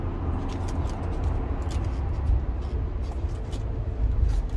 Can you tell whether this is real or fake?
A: real